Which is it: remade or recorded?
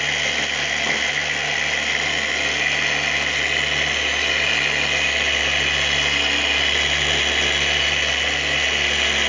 recorded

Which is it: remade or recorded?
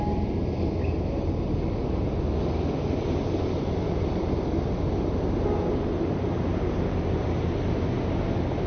recorded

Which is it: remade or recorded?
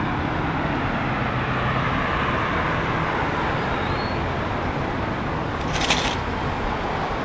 recorded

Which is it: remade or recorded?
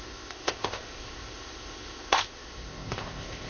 remade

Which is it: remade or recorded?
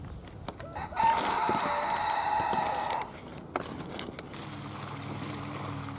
recorded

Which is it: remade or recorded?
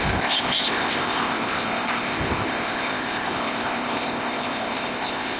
remade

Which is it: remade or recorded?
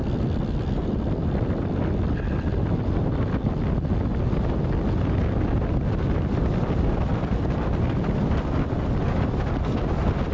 recorded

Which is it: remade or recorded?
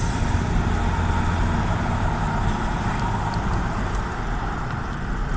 recorded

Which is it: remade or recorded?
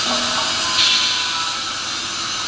recorded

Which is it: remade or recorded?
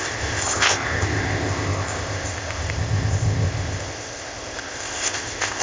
remade